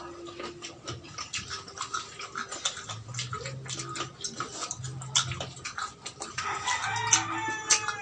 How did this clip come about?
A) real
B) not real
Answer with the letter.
A